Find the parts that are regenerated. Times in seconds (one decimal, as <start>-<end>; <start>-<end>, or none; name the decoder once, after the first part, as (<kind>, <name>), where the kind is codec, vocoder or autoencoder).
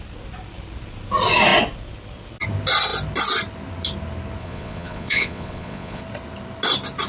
4.4-6.0 (vocoder, Vocos)